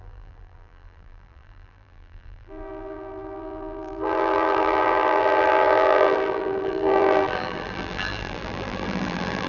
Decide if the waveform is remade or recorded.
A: remade